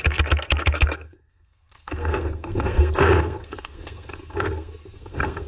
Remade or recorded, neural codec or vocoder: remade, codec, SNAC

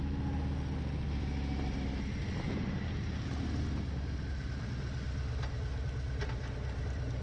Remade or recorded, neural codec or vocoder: recorded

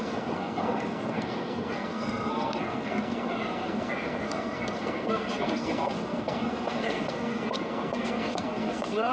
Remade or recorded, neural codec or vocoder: remade, codec, SNAC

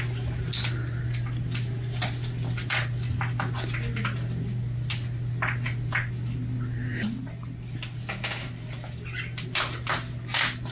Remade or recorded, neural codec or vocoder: recorded